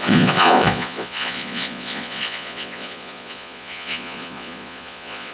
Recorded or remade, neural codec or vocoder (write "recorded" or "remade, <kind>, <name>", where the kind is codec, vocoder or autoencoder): remade, vocoder, Vocos